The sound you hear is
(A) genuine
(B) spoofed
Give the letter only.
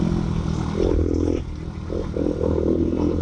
A